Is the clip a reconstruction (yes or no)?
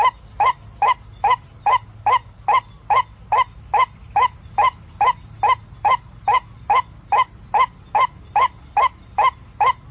no